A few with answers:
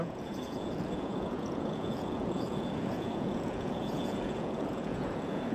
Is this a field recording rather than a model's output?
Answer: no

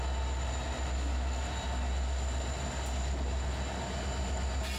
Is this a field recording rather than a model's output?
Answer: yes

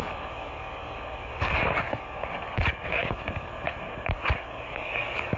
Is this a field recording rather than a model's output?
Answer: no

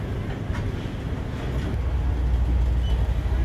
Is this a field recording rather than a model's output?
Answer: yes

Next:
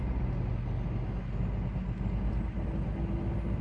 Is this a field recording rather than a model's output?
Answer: yes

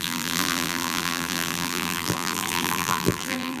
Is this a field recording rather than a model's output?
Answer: no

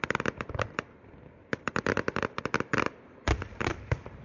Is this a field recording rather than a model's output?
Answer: no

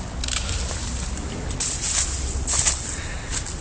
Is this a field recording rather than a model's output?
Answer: yes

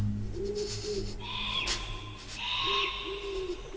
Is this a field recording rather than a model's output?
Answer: yes